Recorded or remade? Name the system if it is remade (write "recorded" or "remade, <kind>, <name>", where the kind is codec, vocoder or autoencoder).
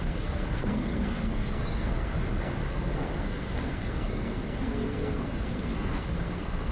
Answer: remade, codec, SNAC